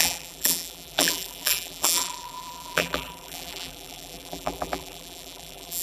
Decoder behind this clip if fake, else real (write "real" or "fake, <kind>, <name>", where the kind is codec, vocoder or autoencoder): fake, vocoder, BigVGAN v2